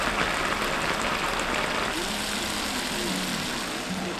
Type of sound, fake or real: real